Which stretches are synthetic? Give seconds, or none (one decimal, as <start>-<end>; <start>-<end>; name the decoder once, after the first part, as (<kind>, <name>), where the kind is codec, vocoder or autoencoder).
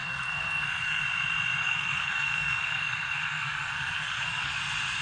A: 0.0-1.0 (codec, SNAC); 1.6-4.6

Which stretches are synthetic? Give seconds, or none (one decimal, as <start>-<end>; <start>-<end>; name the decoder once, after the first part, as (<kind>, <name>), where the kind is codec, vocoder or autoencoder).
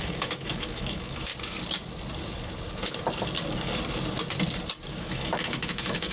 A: 0.0-1.3 (autoencoder, DAC-VAE); 5.0-6.1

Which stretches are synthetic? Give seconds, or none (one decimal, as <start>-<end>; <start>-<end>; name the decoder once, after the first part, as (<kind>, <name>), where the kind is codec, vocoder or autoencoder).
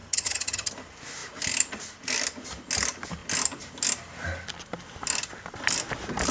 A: 0.0-0.7 (vocoder, HiFi-GAN)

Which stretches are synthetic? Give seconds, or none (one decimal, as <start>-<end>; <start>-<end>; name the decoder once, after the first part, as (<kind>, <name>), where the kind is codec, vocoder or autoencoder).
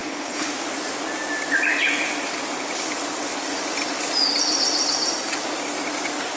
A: 0.0-0.5 (codec, HILCodec)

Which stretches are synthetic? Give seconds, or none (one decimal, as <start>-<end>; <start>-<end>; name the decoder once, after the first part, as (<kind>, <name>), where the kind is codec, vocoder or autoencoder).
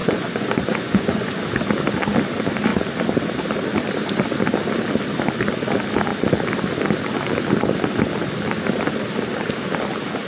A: 0.0-1.4 (vocoder, Vocos)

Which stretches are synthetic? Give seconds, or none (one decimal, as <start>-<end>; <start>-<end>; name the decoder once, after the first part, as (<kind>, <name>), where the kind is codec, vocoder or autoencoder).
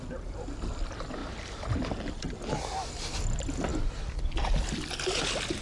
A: none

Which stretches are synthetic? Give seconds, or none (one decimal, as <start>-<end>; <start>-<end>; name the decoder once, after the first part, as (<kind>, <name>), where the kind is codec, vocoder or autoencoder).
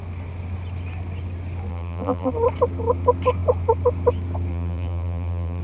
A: 1.7-2.3 (vocoder, BigVGAN v2); 4.5-5.6